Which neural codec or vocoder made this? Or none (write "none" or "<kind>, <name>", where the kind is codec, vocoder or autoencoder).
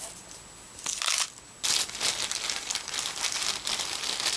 none